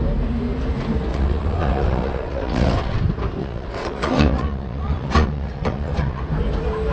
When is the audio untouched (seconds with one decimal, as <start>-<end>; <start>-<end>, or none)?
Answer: 0.0-1.1; 3.0-3.4; 6.2-6.9